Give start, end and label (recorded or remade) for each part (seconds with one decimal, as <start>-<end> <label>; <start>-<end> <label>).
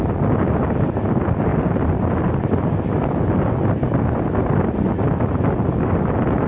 0.0-6.5 recorded